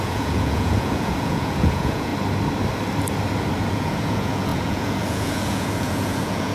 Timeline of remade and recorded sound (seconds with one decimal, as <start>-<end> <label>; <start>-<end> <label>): 0.0-2.1 remade; 2.1-3.7 recorded; 3.7-6.5 remade